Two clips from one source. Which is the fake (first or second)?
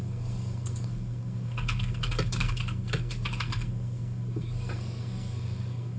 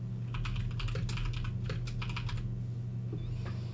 first